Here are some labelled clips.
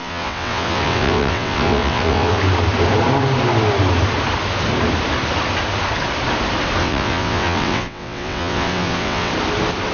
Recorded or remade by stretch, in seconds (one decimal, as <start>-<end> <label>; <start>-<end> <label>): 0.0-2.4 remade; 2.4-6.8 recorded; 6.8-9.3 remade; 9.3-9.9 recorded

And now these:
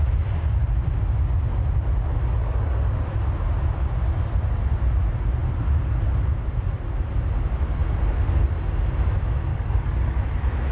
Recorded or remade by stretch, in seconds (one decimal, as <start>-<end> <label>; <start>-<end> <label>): 0.0-2.4 recorded; 2.4-3.0 remade; 3.0-9.5 recorded; 9.5-10.2 remade; 10.2-10.7 recorded

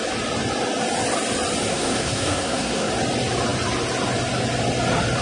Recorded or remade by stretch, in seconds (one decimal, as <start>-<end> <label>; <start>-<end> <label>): 0.0-1.7 recorded; 1.7-2.9 remade; 2.9-5.2 recorded

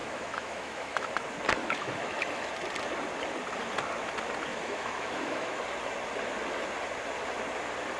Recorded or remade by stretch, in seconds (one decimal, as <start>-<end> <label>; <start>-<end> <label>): 0.0-1.1 remade; 1.1-1.6 recorded; 1.6-2.5 remade; 2.5-4.5 recorded; 4.5-5.6 remade; 5.6-8.0 recorded

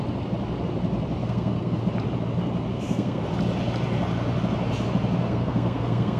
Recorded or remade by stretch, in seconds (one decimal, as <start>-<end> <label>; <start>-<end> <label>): 0.0-1.2 recorded; 1.2-1.8 remade; 1.8-2.7 recorded; 2.7-3.2 remade; 3.2-5.2 recorded; 5.2-6.2 remade

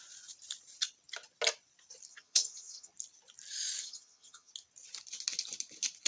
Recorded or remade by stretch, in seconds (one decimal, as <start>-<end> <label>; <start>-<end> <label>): 0.0-2.1 recorded; 2.1-2.9 remade; 2.9-3.8 recorded; 3.8-4.5 remade; 4.5-6.1 recorded

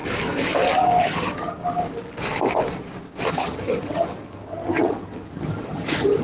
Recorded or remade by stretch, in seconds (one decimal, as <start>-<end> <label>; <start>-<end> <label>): 0.0-1.0 recorded; 1.0-1.6 remade; 1.6-3.3 recorded; 3.3-6.2 remade